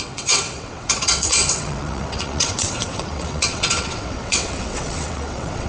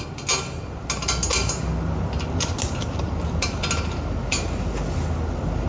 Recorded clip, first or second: second